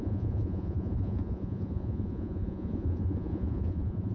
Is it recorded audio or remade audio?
remade